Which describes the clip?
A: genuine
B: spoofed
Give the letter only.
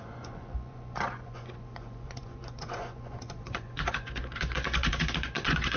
B